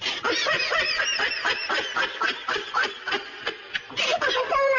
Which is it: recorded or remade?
recorded